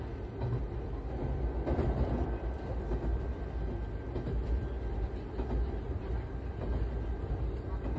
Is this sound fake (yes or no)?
no